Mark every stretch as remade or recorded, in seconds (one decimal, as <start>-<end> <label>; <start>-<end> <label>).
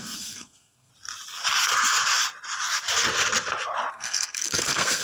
0.0-0.9 remade; 0.9-3.9 recorded; 3.9-5.0 remade